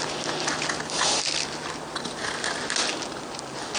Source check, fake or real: real